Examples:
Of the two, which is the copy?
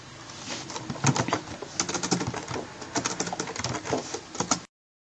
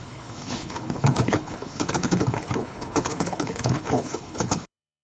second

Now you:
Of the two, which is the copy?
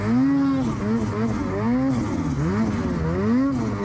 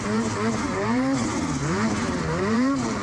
second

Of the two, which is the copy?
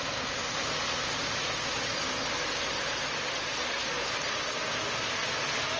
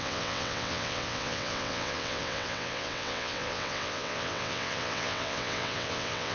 second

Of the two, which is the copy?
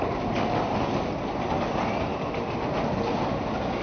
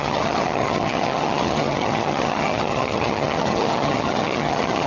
second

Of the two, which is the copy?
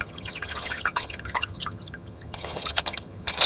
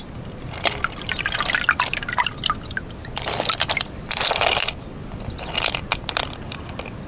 first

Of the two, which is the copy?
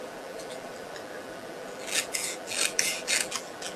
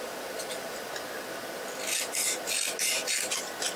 first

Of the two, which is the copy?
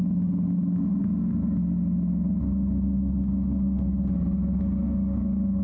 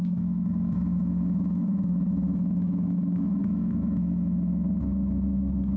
second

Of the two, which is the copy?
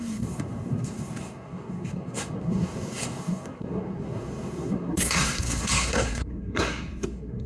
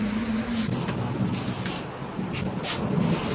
first